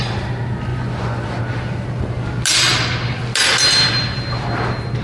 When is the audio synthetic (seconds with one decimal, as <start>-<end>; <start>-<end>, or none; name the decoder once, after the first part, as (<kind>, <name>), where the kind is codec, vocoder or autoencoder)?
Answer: 0.7-1.4 (vocoder, Vocos)